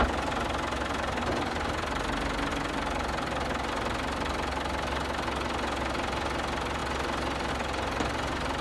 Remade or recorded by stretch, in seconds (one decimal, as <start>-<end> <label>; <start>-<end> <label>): 0.0-8.6 recorded